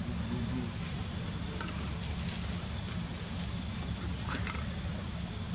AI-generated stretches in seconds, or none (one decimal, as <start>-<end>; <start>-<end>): none